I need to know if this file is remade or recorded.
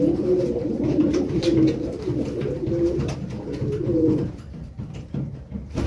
remade